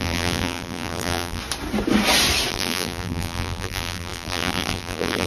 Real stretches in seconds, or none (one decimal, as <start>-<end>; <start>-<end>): 1.4-2.5